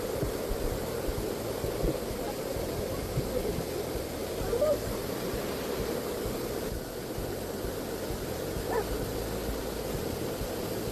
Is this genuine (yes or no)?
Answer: yes